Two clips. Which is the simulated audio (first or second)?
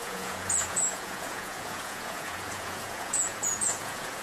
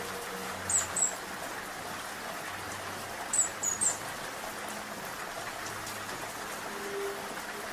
first